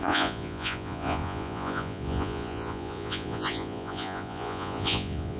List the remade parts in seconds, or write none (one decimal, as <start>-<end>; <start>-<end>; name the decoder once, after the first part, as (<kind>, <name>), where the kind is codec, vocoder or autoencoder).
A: 0.0-5.4 (vocoder, Vocos)